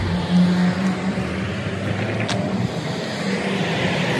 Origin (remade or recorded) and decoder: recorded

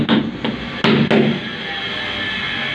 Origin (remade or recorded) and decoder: recorded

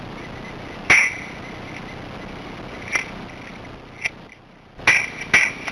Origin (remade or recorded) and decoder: recorded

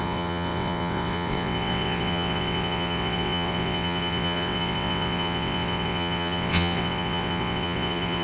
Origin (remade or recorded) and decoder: remade, vocoder, WaveNeXt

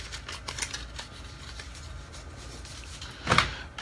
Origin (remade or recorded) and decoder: recorded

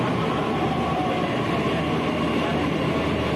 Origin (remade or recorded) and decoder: recorded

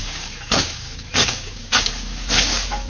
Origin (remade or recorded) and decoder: remade, codec, DAC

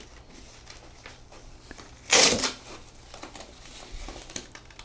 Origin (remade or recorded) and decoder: recorded